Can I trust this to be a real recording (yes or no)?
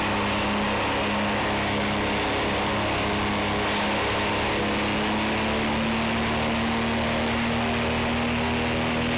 yes